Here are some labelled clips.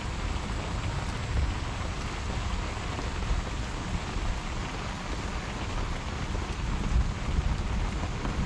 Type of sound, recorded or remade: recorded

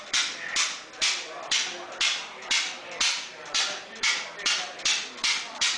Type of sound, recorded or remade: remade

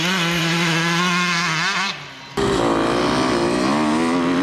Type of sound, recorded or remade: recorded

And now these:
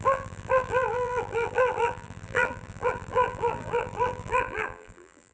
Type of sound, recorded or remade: remade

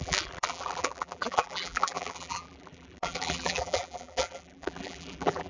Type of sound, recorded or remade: remade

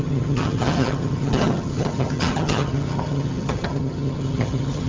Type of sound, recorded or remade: remade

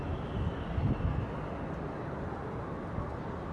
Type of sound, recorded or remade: recorded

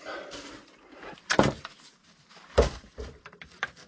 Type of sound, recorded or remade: remade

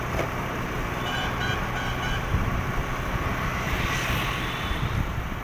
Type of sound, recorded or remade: recorded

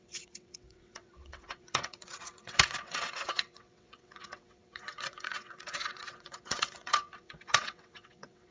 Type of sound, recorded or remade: remade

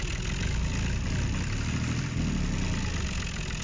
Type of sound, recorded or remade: recorded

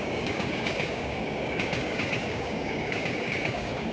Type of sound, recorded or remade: remade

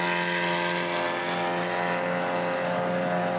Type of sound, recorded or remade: recorded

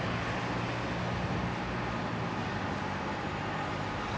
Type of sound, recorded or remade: recorded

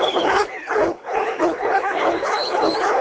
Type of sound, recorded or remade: remade